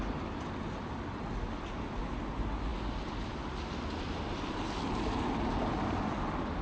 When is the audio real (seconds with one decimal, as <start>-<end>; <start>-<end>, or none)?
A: 0.0-6.6